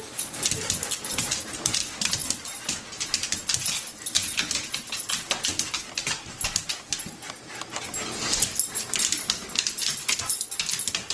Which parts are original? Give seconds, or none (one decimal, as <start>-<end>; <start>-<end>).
0.0-11.1